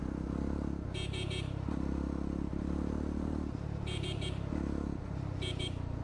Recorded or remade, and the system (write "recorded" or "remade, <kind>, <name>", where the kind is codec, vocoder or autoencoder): recorded